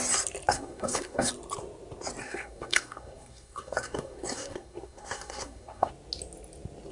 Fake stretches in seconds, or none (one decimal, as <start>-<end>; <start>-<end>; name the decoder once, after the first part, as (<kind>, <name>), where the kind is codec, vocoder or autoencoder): 0.5-1.3 (codec, SNAC); 2.2-5.9